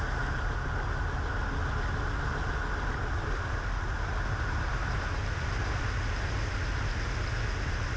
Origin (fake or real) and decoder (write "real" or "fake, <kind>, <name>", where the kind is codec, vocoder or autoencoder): real